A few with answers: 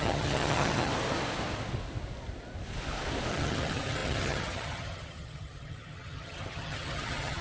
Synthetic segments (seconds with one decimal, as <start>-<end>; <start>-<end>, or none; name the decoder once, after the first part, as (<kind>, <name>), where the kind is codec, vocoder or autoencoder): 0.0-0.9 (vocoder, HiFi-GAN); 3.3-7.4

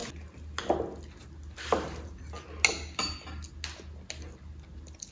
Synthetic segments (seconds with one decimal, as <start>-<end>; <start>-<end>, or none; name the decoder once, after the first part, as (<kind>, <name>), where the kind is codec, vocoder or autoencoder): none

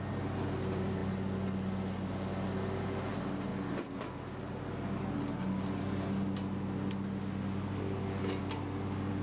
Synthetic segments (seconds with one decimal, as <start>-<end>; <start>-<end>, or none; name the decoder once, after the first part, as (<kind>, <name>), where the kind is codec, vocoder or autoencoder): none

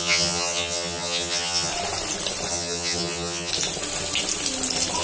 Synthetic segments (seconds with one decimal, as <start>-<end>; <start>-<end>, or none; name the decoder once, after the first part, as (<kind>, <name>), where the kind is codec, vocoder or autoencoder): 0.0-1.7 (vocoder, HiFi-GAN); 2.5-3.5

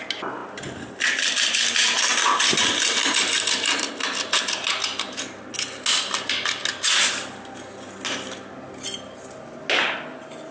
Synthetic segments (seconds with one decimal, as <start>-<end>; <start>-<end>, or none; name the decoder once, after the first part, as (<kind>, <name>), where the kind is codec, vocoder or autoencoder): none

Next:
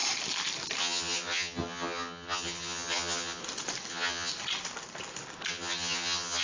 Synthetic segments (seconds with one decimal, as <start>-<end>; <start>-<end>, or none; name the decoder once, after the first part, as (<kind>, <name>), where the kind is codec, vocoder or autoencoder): 0.8-3.4 (vocoder, HiFi-GAN); 3.9-4.3; 5.5-6.4